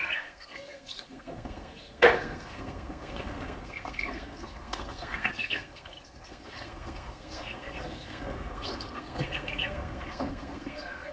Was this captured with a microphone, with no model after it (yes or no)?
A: no